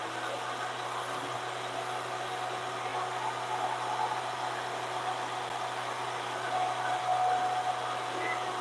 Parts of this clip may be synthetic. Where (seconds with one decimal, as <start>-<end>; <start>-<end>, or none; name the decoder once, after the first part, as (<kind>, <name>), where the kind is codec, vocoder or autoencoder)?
none